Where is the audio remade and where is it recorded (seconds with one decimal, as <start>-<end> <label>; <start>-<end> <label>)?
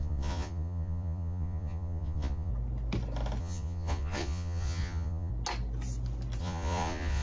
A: 0.0-2.5 remade; 2.5-3.4 recorded; 3.4-5.3 remade; 5.3-6.4 recorded; 6.4-7.2 remade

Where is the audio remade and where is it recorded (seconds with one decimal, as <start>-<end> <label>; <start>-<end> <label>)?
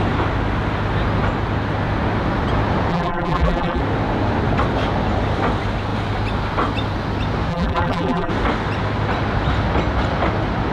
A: 0.0-2.9 recorded; 2.9-3.8 remade; 3.8-7.5 recorded; 7.5-8.3 remade; 8.3-10.7 recorded